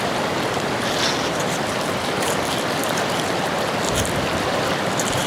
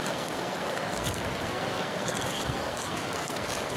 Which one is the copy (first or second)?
second